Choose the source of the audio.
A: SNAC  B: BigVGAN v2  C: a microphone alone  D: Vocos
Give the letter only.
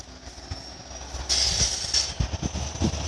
C